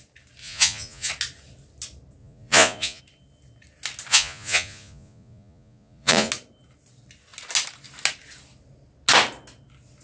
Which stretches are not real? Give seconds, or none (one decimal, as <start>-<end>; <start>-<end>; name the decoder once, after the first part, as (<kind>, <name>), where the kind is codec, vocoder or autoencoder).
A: 0.4-1.1 (vocoder, Vocos); 2.2-3.0; 4.1-6.3